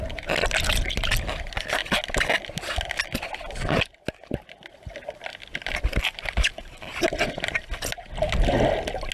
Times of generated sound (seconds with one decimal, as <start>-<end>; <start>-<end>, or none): none

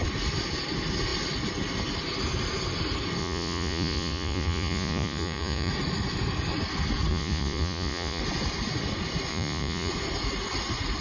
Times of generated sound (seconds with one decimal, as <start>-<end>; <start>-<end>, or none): 3.2-5.7; 7.1-8.2; 9.3-9.9